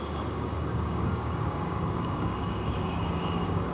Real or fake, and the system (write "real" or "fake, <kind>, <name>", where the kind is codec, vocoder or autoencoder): fake, codec, DAC